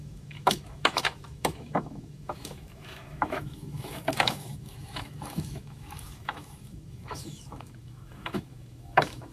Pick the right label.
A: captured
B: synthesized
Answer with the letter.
B